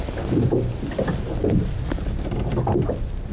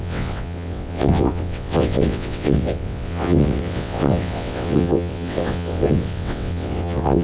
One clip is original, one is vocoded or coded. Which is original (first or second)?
first